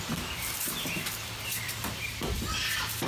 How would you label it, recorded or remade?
remade